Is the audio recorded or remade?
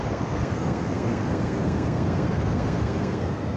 remade